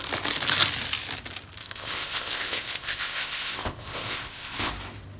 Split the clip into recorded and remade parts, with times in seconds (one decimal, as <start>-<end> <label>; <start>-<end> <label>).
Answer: 0.0-1.6 recorded; 1.6-4.7 remade; 4.7-5.2 recorded